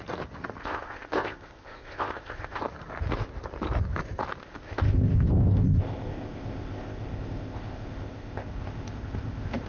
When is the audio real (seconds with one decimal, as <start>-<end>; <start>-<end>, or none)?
0.0-0.6; 2.6-4.4